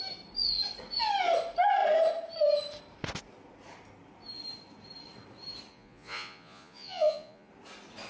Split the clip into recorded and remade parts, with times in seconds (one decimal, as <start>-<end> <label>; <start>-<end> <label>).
0.0-5.7 recorded; 5.7-7.5 remade; 7.5-8.1 recorded